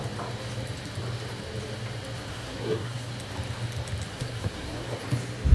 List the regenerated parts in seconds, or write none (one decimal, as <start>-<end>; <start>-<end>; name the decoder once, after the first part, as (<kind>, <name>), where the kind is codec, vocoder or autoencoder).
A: 2.3-3.1 (codec, SNAC); 4.1-5.0